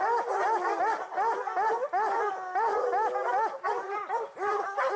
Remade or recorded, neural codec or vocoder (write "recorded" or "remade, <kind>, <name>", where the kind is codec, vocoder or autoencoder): recorded